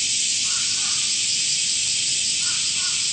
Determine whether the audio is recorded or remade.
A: remade